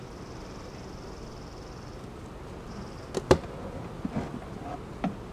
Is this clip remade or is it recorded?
recorded